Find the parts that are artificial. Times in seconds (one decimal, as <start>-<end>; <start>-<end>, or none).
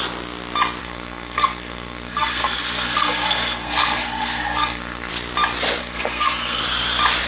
0.8-5.1; 5.8-6.6